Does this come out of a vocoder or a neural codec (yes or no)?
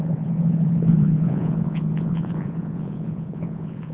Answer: yes